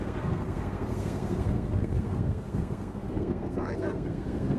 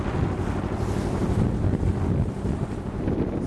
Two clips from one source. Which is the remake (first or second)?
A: first